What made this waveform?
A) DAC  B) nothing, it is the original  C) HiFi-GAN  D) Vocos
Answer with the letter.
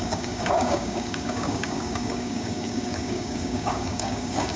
A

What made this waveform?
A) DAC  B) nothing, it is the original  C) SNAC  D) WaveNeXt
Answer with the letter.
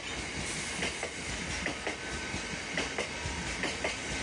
B